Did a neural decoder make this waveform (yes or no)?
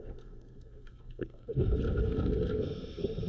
yes